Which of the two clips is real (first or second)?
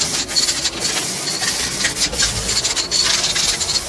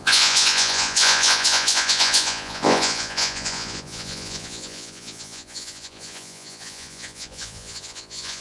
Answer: first